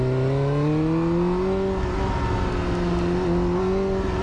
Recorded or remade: recorded